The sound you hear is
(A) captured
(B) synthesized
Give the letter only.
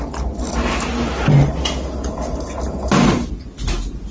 A